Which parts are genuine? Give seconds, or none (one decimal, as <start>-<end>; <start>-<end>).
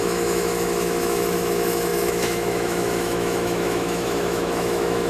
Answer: none